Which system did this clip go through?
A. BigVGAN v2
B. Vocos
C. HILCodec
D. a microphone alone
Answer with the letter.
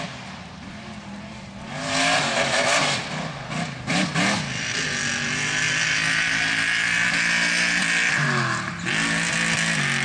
D